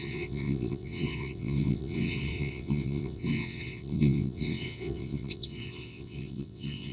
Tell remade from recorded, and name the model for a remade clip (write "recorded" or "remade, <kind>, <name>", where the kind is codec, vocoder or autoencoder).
remade, vocoder, WaveNeXt